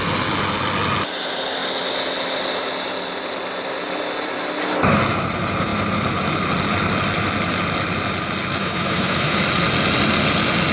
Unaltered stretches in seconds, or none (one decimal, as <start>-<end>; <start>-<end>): 0.0-8.6; 9.4-10.7